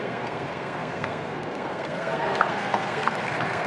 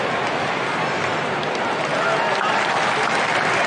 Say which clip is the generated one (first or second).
first